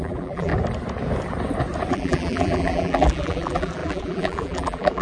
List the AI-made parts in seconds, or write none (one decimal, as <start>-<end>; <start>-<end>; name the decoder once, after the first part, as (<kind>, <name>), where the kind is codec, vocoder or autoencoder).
0.0-0.5 (vocoder, BigVGAN v2); 1.9-5.0